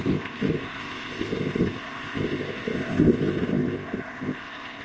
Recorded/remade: remade